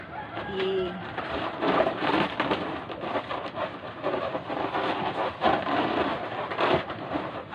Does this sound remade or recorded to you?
remade